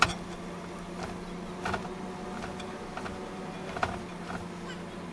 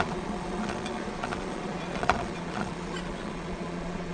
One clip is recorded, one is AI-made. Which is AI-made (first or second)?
second